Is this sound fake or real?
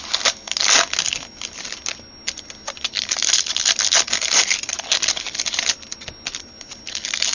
real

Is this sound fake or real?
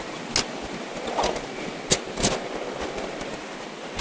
real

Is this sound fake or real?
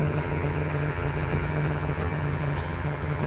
fake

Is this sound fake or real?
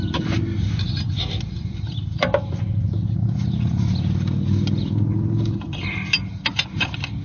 real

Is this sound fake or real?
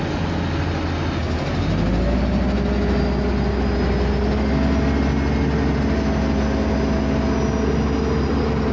real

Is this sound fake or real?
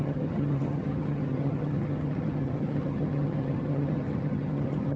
fake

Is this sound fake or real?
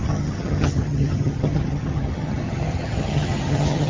fake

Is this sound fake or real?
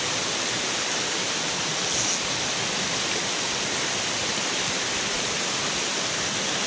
real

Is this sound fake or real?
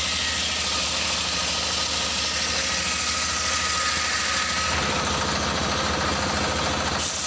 real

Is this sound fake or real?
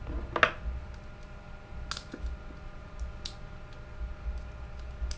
real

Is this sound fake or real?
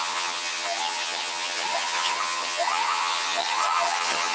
fake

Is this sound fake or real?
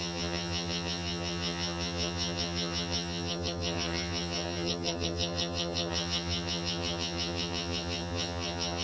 fake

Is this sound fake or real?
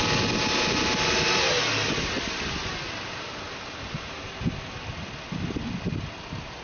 real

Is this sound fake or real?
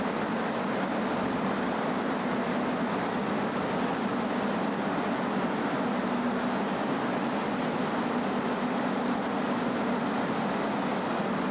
real